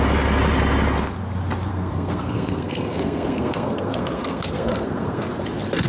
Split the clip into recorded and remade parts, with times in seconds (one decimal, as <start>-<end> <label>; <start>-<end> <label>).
0.0-1.7 recorded; 1.7-5.2 remade; 5.2-5.9 recorded